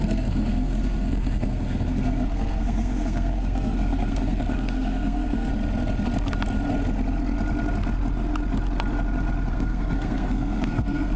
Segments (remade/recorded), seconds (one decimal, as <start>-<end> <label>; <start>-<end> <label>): 0.0-5.5 remade; 5.5-9.5 recorded; 9.5-11.2 remade